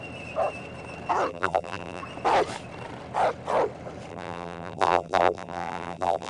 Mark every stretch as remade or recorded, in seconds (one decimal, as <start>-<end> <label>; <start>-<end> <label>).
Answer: 0.0-1.3 recorded; 1.3-2.0 remade; 2.0-4.1 recorded; 4.1-6.3 remade